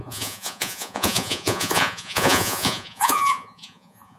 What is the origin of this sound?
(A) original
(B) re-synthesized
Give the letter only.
B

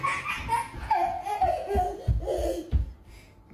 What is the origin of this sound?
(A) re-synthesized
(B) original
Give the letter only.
B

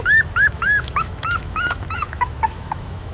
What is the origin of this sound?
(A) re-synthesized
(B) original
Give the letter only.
A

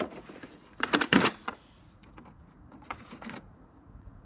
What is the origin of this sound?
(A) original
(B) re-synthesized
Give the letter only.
B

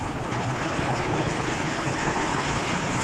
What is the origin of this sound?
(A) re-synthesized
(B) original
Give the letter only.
A